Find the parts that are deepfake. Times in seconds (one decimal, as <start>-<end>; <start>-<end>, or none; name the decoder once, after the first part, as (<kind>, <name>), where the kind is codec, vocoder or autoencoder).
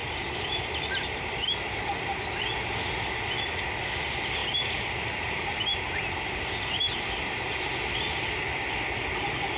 0.0-1.5 (vocoder, BigVGAN v2)